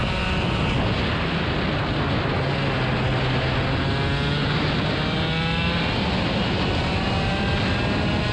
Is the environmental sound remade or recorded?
recorded